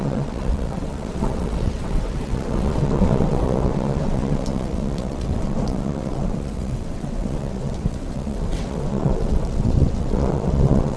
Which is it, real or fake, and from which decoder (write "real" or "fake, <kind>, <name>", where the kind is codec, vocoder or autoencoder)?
fake, vocoder, WaveNeXt